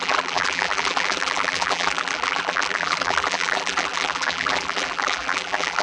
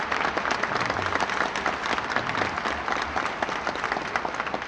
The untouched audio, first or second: second